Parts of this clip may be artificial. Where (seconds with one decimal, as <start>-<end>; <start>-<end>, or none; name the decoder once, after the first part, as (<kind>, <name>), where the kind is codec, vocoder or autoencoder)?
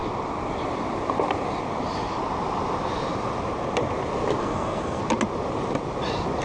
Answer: 4.4-5.0 (codec, SNAC)